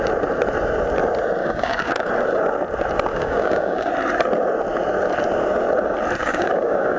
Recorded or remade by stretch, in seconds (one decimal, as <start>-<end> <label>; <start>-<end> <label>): 0.0-1.4 recorded; 1.4-2.1 remade; 2.1-3.1 recorded; 3.1-3.9 remade; 3.9-6.2 recorded; 6.2-7.0 remade